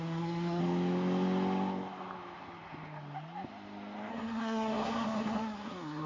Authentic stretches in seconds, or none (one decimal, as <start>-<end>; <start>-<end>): 0.6-4.1